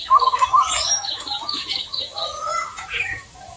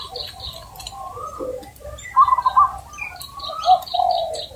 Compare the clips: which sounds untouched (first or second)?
second